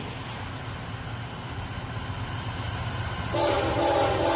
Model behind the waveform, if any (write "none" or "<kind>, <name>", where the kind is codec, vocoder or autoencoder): none